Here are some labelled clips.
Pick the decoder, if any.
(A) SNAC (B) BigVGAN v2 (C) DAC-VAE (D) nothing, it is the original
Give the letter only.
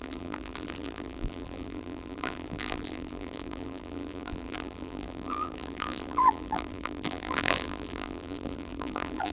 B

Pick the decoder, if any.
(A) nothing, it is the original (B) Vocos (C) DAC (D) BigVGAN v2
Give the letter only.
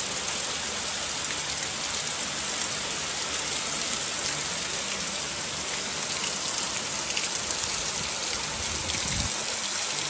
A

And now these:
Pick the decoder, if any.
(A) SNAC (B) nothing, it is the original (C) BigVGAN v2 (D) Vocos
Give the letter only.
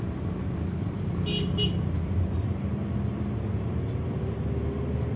B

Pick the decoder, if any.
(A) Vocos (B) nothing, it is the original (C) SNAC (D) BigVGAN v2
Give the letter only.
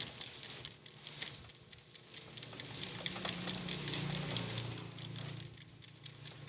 B